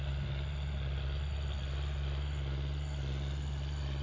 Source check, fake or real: real